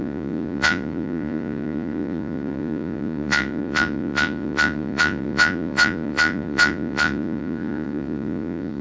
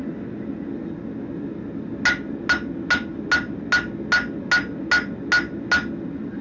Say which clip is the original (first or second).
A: second